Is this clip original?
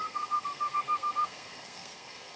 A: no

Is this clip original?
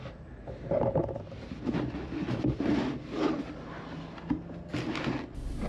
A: yes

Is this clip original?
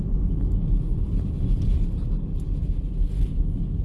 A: yes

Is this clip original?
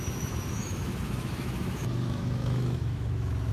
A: no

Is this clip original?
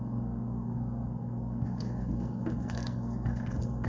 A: no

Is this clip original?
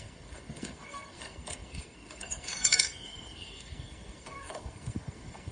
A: no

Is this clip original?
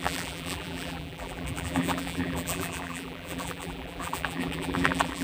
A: no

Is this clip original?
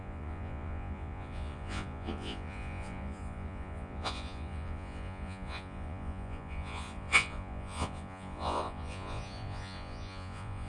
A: no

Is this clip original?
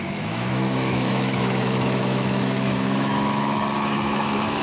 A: no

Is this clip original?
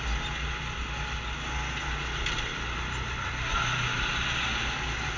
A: yes